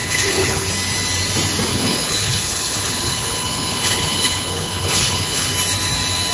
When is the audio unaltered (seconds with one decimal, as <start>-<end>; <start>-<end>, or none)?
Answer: 0.7-1.7; 5.5-6.3